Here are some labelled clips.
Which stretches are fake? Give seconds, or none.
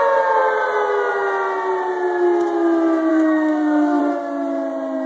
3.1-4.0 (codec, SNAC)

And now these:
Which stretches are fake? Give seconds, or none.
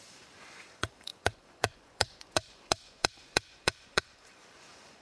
0.0-5.0 (vocoder, Vocos)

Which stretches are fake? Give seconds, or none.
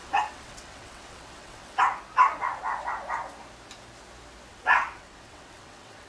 0.0-1.8 (vocoder, WaveNeXt); 4.5-6.1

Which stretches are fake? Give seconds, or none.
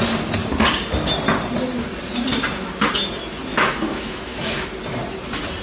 3.5-4.7 (autoencoder, DAC-VAE)